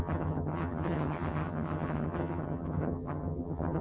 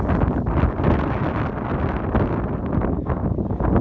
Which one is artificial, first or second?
first